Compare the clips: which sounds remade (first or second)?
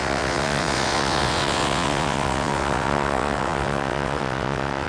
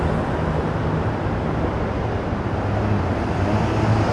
first